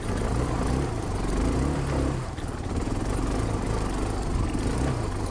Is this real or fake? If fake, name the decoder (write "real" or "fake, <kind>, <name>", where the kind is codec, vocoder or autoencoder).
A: real